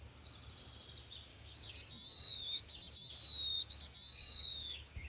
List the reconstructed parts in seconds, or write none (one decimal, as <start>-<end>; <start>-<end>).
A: 1.3-3.1; 3.5-5.1